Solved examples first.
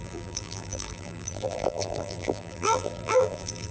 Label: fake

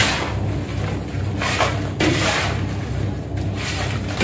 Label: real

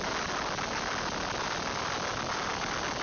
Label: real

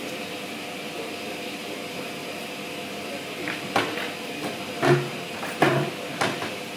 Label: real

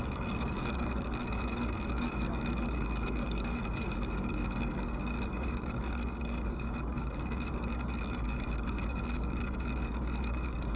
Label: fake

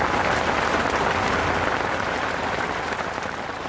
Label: real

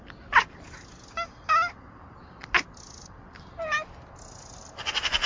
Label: real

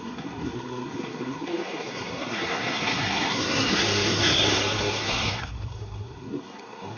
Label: fake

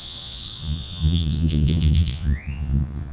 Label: fake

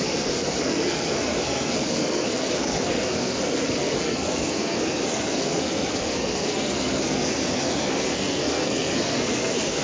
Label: fake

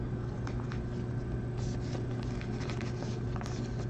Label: real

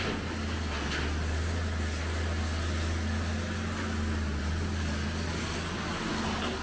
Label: real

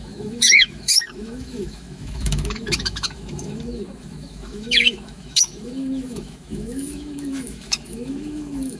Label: fake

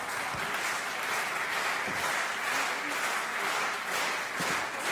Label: real